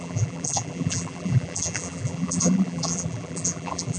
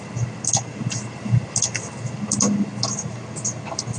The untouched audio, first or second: second